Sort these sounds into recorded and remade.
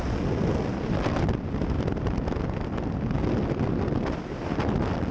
recorded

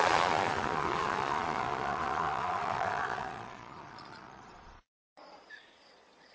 remade